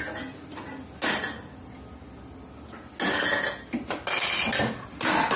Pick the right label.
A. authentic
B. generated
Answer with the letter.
A